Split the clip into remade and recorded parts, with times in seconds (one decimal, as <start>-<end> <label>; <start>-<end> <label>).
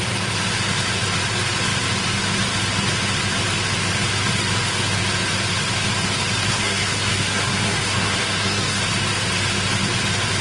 0.0-6.5 recorded; 6.5-8.8 remade; 8.8-10.4 recorded